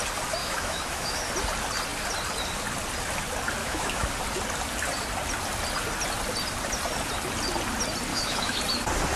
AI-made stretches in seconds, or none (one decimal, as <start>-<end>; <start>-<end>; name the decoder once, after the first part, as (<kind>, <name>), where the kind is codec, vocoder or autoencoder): 0.4-1.3 (autoencoder, DAC-VAE); 3.6-4.1; 8.1-8.6